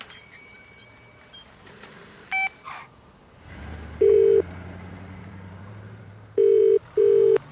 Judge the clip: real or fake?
fake